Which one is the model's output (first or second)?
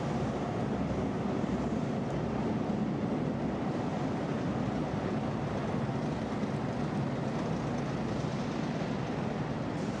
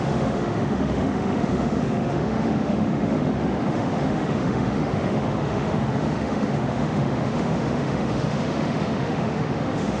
second